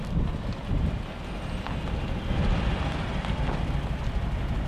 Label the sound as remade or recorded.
recorded